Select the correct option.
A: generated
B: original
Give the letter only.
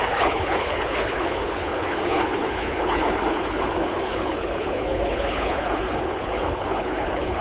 A